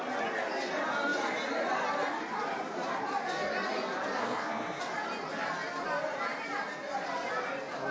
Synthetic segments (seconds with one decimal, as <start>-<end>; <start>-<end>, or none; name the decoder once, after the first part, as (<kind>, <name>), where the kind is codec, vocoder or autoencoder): 4.2-4.8 (codec, SNAC)